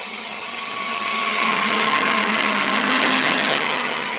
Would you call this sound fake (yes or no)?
yes